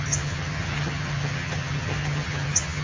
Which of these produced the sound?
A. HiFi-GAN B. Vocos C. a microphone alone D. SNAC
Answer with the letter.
A